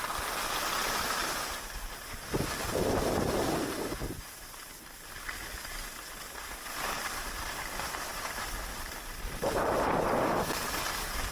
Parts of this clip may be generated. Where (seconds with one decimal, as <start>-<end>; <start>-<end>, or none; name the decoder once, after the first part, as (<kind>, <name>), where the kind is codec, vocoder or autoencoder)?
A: 8.1-8.7 (vocoder, BigVGAN v2)